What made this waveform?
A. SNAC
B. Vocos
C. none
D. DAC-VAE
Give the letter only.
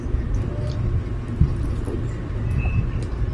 C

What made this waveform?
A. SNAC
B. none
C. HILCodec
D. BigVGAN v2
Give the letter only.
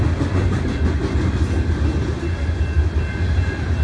B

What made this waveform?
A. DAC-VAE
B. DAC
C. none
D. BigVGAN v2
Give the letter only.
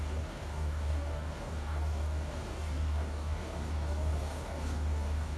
B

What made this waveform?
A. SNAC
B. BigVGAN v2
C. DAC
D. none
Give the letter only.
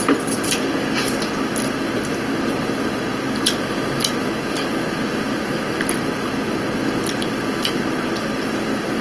D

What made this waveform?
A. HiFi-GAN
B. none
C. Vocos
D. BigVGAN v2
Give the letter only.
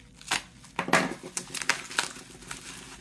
B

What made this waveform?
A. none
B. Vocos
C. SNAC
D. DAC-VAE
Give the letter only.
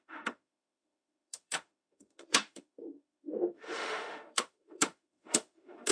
D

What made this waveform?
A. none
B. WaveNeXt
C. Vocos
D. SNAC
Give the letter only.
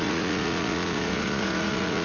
C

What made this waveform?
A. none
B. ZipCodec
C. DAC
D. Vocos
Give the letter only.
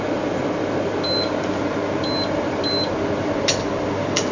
A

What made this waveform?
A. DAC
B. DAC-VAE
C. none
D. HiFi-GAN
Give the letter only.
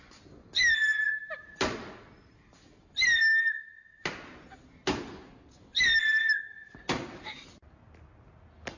C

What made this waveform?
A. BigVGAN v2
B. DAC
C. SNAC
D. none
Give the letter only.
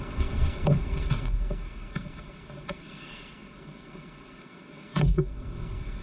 C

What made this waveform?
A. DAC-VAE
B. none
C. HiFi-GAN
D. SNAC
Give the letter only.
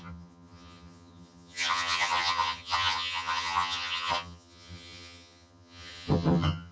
C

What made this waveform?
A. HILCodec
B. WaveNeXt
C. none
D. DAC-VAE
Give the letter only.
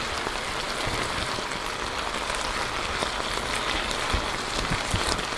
C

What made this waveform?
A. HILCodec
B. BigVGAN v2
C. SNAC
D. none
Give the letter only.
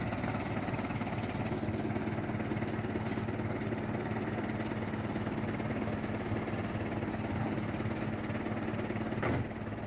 D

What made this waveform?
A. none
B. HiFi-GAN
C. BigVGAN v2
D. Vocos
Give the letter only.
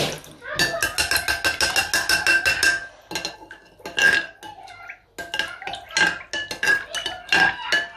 A